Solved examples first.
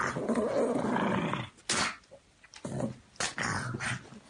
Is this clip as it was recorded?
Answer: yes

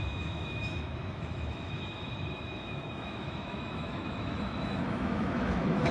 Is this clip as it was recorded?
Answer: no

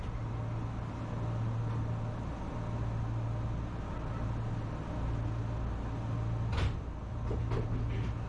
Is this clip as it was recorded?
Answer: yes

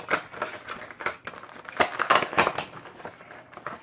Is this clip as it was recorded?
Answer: yes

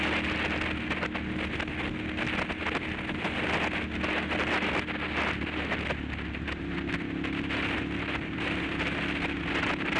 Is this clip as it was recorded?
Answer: yes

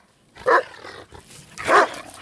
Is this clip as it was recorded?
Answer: yes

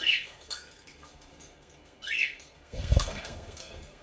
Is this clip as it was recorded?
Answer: no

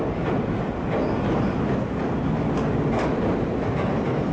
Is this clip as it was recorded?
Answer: yes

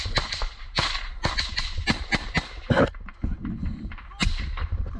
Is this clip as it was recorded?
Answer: yes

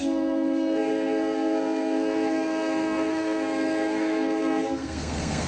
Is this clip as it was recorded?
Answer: no